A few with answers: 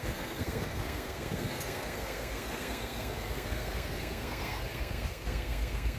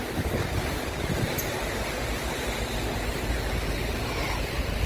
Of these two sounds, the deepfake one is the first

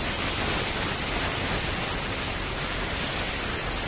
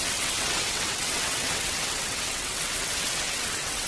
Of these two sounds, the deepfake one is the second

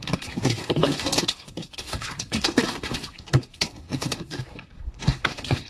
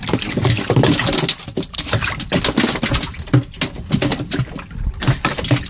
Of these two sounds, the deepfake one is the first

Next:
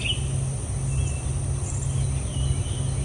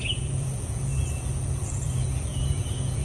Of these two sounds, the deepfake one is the second